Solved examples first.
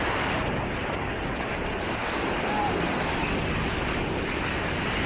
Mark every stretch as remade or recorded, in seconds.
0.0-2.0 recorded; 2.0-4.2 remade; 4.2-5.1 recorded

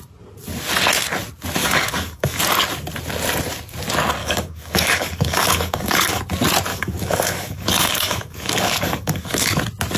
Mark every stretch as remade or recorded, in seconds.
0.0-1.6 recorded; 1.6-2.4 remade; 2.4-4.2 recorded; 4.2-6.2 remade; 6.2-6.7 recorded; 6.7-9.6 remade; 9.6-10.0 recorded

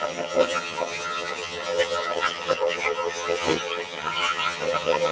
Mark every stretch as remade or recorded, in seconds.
0.0-5.1 remade

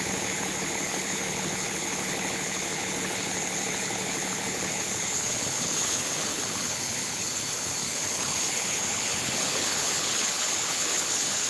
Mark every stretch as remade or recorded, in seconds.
0.0-11.5 remade

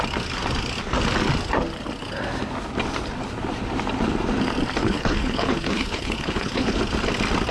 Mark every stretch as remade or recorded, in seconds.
0.0-4.8 recorded; 4.8-6.8 remade; 6.8-7.5 recorded

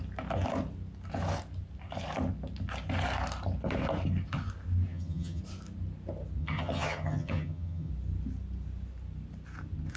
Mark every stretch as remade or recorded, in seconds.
0.0-4.9 recorded; 4.9-5.4 remade; 5.4-6.4 recorded; 6.4-7.9 remade; 7.9-10.0 recorded